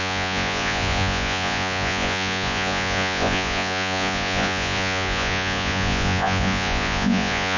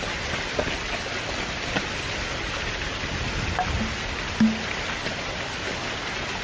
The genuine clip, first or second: second